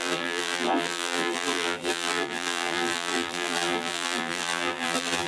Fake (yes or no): yes